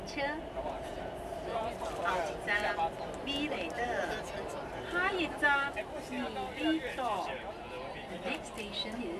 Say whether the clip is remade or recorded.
recorded